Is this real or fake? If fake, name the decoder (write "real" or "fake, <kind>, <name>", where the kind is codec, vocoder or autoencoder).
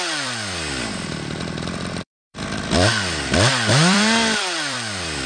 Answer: fake, vocoder, BigVGAN v2